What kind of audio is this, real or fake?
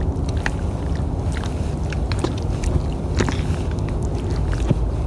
real